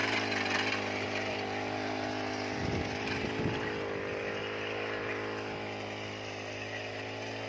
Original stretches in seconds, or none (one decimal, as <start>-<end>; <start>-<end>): 0.0-7.5